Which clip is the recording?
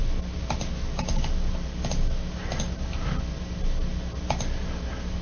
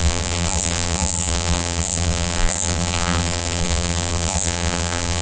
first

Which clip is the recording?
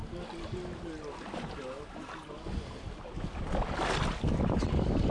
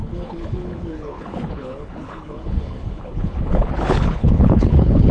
first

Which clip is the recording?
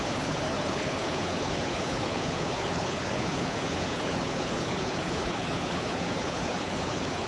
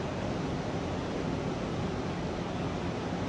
second